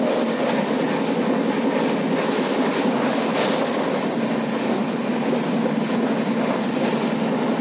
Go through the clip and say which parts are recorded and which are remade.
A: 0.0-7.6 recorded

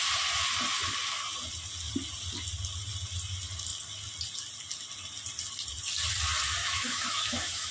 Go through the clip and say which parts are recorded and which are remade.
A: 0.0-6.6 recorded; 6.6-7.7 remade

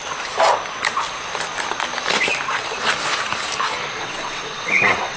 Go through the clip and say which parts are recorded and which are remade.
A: 0.0-4.0 recorded; 4.0-5.2 remade

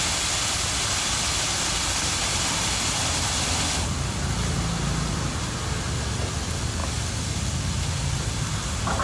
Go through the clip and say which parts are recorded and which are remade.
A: 0.0-9.0 recorded

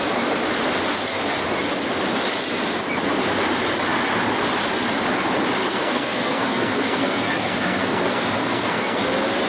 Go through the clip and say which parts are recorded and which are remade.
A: 0.0-5.7 recorded; 5.7-9.0 remade; 9.0-9.5 recorded